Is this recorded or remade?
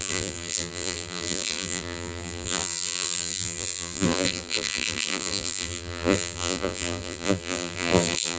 remade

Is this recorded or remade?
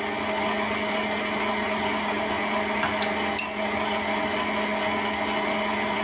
recorded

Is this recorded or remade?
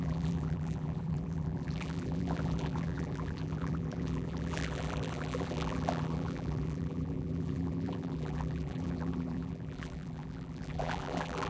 remade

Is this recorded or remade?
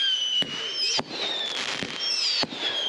recorded